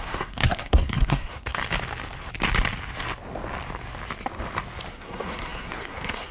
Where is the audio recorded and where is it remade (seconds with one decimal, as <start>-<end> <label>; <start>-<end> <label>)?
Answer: 0.0-1.6 remade; 1.6-4.9 recorded; 4.9-6.3 remade